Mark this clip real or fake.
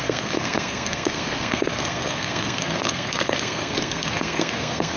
fake